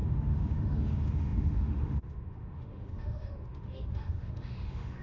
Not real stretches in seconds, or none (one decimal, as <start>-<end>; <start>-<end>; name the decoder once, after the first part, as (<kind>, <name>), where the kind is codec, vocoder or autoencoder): 0.0-5.0 (autoencoder, DAC-VAE)